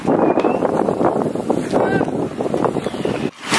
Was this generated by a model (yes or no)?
no